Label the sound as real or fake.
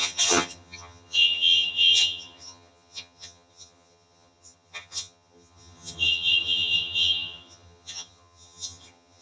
fake